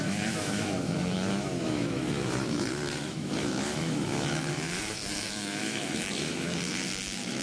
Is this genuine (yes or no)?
no